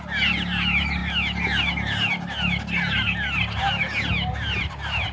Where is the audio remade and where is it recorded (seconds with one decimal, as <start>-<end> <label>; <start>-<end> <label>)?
0.0-5.1 recorded